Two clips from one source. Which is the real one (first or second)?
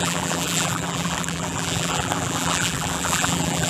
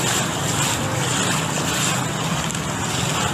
second